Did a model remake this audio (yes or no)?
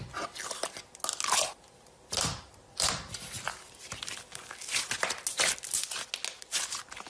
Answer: no